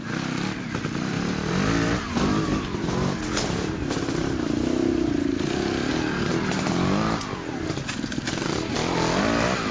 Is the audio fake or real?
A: real